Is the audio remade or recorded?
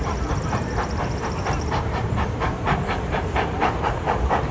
remade